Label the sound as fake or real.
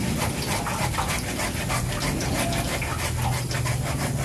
real